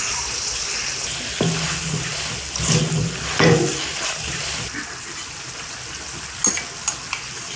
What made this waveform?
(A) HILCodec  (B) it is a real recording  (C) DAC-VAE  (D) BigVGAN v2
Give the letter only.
B